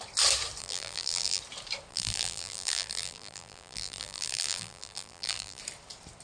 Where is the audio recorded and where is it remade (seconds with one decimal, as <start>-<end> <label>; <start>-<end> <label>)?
0.0-0.6 recorded; 0.6-1.4 remade; 1.4-1.9 recorded; 1.9-5.6 remade; 5.6-6.2 recorded